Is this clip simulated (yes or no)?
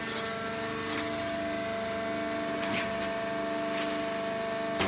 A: no